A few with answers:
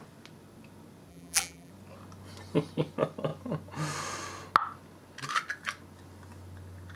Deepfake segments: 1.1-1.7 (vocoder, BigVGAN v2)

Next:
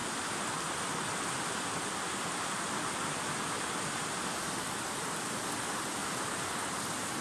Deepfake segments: none

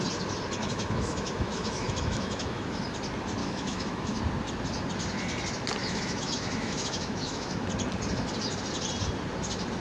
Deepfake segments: 0.6-2.8 (autoencoder, DAC-VAE); 3.4-4.2; 5.8-7.7

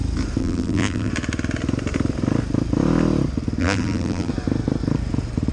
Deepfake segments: 0.4-1.1 (vocoder, BigVGAN v2); 3.6-4.3

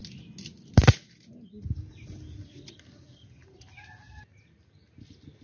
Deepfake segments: none

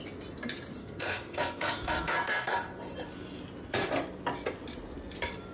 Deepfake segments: 0.8-2.5 (codec, SNAC)

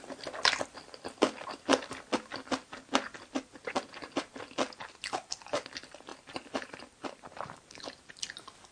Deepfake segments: 6.1-8.1 (vocoder, BigVGAN v2)